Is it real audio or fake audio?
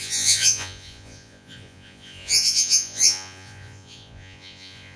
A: fake